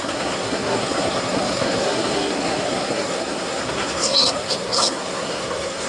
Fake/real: fake